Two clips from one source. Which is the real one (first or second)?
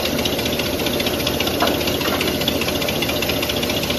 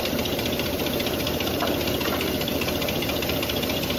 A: first